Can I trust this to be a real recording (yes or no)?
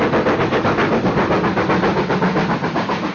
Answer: yes